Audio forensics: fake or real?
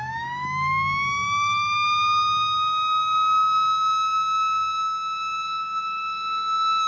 fake